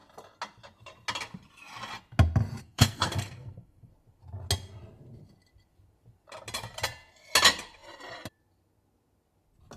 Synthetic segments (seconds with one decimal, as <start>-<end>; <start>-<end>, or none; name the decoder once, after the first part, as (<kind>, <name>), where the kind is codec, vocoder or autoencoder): 2.6-3.9 (codec, SNAC)